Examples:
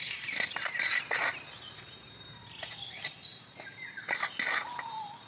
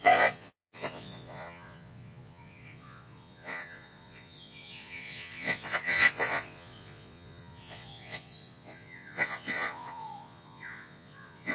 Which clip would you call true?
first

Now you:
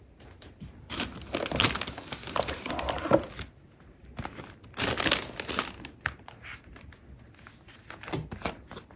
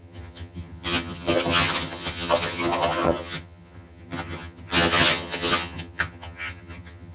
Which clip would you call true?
first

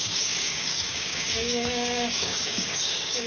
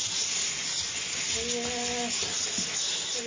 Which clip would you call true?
second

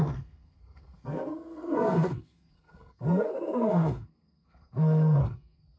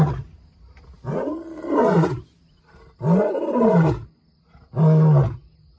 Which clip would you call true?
second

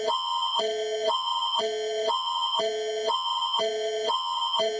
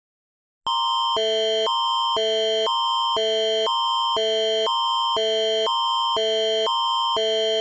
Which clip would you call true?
second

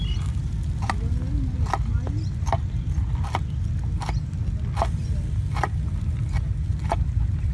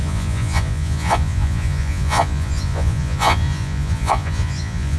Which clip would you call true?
first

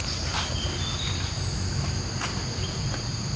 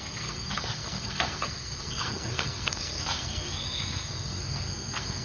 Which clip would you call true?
first